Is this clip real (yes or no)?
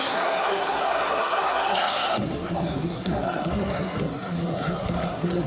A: no